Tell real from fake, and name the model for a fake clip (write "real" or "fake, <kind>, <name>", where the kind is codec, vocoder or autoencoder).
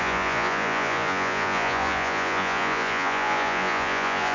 fake, vocoder, Vocos